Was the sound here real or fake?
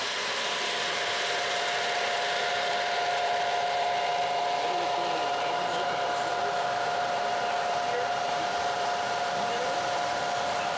real